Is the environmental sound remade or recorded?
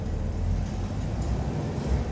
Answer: remade